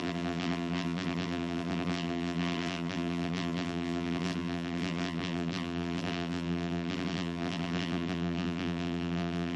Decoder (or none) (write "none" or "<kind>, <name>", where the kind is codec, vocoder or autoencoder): vocoder, BigVGAN v2